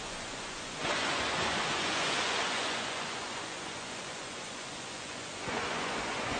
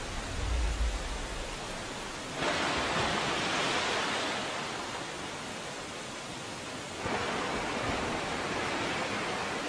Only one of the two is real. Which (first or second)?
second